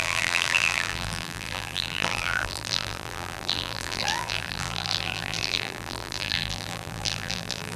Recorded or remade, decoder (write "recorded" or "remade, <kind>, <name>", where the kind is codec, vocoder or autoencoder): remade, vocoder, BigVGAN v2